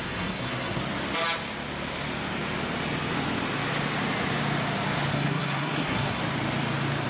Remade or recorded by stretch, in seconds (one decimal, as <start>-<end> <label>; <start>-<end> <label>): 0.0-0.8 remade; 0.8-5.1 recorded; 5.1-6.2 remade; 6.2-7.1 recorded